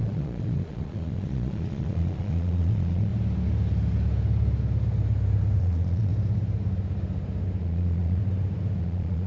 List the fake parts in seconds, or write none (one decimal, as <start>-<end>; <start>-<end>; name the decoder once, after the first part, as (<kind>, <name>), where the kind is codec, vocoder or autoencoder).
0.0-3.1 (vocoder, Vocos); 5.6-6.1; 7.6-8.2; 8.8-9.3